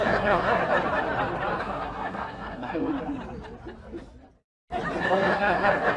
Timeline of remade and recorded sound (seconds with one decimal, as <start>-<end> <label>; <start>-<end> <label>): 0.0-0.6 remade; 0.6-1.6 recorded; 1.6-2.9 remade; 2.9-5.0 recorded; 5.0-6.0 remade